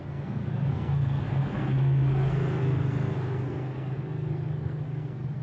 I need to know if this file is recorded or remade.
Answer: remade